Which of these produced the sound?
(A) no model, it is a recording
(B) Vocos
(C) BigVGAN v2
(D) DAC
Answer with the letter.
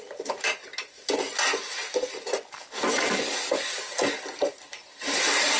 A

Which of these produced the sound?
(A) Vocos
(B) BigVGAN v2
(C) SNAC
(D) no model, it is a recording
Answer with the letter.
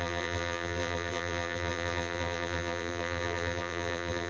B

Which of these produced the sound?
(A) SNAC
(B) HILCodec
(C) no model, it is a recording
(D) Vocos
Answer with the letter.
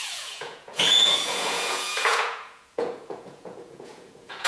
D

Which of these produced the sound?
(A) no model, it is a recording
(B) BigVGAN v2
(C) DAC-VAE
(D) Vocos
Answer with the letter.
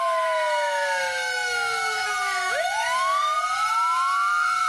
C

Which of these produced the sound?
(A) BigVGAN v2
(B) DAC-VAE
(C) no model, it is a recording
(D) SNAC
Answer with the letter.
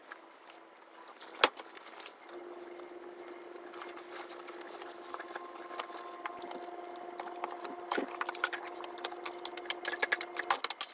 C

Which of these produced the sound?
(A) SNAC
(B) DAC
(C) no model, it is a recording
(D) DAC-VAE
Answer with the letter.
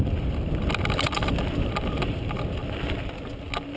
C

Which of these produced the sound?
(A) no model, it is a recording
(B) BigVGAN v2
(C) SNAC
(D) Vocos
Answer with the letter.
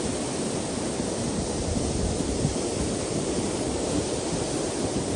A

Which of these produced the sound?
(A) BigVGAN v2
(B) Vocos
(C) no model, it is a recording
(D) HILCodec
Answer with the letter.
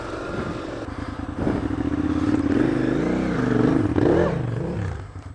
C